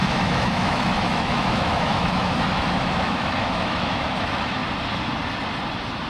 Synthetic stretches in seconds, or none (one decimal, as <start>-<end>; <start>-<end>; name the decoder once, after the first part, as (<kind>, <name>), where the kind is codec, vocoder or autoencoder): 0.0-4.6 (autoencoder, DAC-VAE)